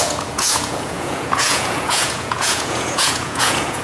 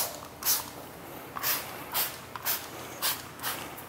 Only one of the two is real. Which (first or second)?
second